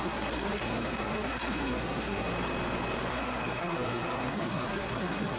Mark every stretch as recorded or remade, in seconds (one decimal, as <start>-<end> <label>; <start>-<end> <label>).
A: 0.0-2.3 remade; 2.3-3.1 recorded; 3.1-5.4 remade